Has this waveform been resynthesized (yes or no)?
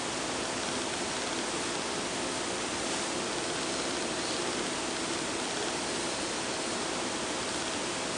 no